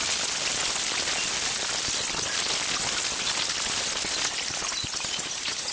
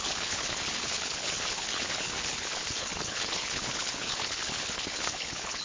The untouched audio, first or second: first